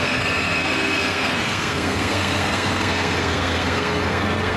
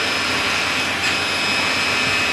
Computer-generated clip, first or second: first